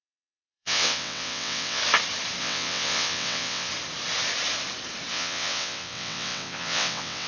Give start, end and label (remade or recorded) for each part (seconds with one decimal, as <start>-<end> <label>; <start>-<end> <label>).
0.0-1.8 remade; 1.8-2.4 recorded; 2.4-3.7 remade; 3.7-5.1 recorded; 5.1-7.3 remade